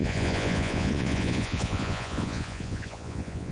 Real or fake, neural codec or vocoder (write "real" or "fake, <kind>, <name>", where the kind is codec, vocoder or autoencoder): fake, vocoder, Vocos